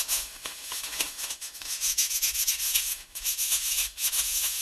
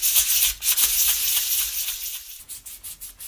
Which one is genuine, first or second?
second